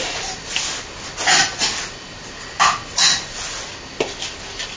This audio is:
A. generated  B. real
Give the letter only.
B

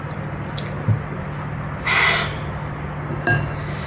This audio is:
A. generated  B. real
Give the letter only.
B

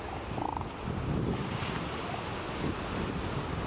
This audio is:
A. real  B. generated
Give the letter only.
A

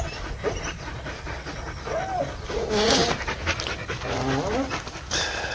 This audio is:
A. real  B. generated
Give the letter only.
A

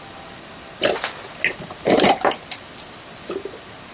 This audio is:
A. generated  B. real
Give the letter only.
B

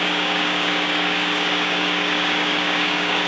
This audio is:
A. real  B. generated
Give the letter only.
B